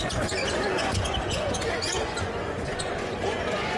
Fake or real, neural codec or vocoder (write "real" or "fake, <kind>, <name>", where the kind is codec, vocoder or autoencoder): fake, vocoder, Vocos